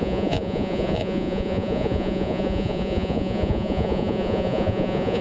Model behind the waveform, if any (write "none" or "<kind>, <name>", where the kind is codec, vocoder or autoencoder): vocoder, Vocos